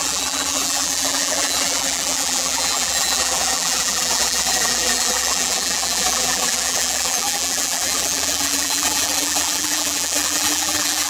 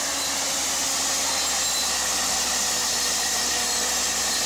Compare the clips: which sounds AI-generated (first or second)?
first